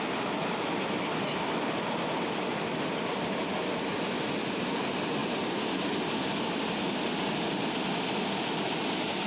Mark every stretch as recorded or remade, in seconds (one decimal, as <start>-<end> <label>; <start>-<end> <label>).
0.0-9.3 recorded